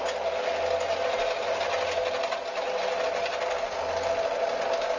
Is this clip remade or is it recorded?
recorded